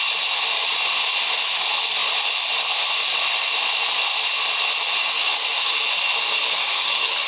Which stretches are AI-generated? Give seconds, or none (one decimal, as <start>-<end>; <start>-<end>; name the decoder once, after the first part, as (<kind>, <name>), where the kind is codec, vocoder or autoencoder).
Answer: 5.0-5.7 (codec, DAC); 6.6-7.3